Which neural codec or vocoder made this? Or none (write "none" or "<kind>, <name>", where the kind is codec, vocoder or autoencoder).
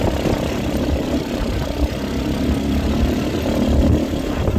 none